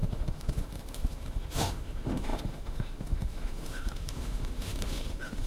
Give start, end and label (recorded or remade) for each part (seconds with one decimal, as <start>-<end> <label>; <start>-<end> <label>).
0.0-5.5 remade